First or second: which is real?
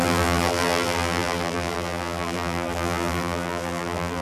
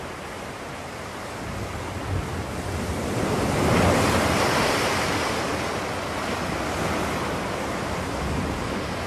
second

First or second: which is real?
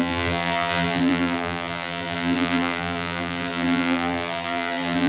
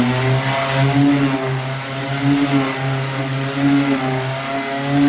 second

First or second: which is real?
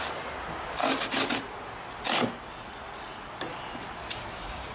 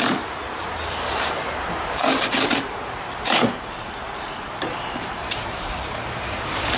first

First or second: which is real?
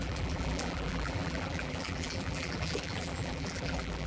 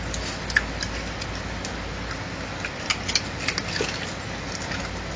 second